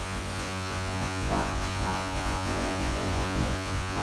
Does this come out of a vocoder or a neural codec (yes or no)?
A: yes